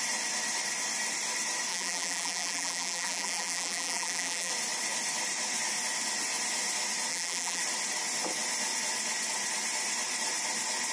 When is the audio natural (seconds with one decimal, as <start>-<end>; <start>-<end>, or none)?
0.0-1.7; 4.5-7.1; 7.6-10.9